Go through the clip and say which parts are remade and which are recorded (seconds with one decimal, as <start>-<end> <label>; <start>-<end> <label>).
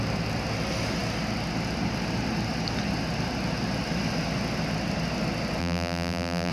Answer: 0.0-5.6 recorded; 5.6-6.5 remade